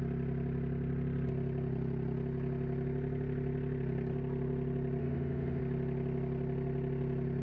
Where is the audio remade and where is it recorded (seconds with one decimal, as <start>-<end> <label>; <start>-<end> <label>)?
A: 0.0-5.0 recorded; 5.0-5.6 remade; 5.6-7.4 recorded